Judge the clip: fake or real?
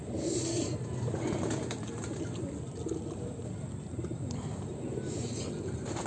real